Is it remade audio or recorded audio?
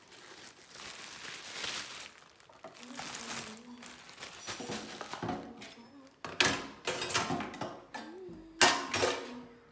recorded